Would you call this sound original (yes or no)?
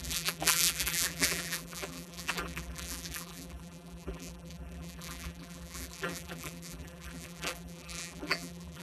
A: no